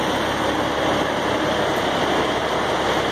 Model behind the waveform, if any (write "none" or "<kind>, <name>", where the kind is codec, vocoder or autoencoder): none